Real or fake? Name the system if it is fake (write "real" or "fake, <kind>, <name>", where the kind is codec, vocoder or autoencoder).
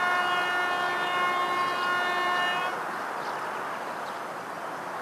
real